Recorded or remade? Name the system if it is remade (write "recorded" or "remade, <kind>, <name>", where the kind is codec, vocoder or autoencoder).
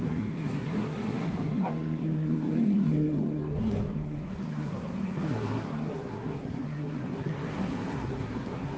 remade, codec, SNAC